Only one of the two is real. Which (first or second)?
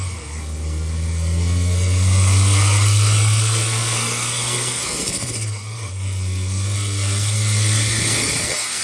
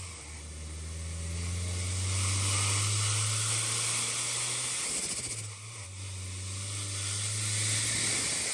second